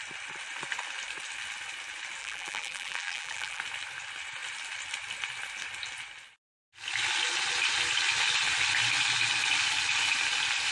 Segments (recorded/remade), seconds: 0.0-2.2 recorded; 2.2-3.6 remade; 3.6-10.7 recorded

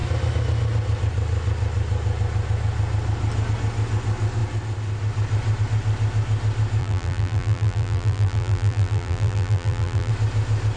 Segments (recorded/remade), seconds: 0.0-6.8 recorded; 6.8-10.1 remade; 10.1-10.8 recorded

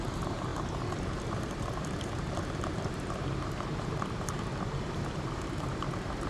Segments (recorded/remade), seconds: 0.0-6.3 remade

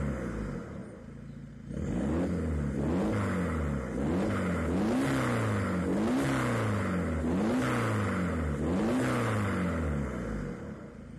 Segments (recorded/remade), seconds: 0.0-11.2 recorded

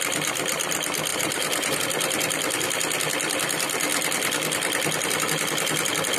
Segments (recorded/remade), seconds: 0.0-1.1 recorded; 1.1-1.8 remade; 1.8-6.2 recorded

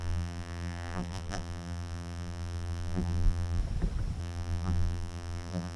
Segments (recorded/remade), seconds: 0.0-3.6 remade; 3.6-4.2 recorded; 4.2-5.8 remade

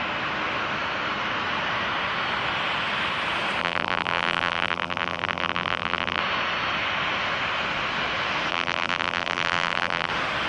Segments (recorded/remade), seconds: 0.0-3.6 recorded; 3.6-6.2 remade; 6.2-8.5 recorded; 8.5-10.1 remade; 10.1-10.5 recorded

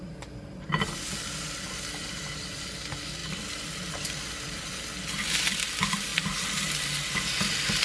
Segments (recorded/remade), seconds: 0.0-3.2 recorded; 3.2-4.3 remade; 4.3-6.1 recorded; 6.1-7.8 remade